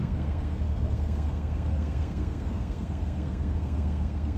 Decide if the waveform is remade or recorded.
remade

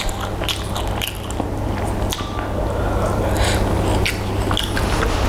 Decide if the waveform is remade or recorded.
recorded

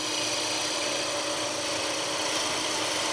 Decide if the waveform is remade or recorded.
recorded